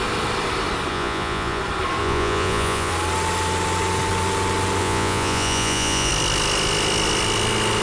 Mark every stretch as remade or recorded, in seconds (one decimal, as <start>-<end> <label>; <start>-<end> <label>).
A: 0.0-0.9 recorded; 0.9-1.6 remade; 1.6-2.0 recorded; 2.0-2.9 remade; 2.9-4.8 recorded; 4.8-6.1 remade; 6.1-7.8 recorded